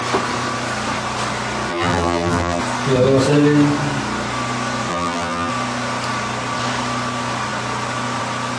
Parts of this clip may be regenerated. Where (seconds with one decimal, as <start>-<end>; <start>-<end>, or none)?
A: 1.7-2.6; 4.9-5.5